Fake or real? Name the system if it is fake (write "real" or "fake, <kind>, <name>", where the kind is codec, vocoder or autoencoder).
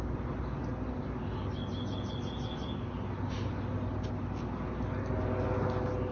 real